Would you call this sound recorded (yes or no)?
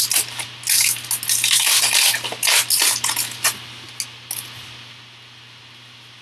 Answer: yes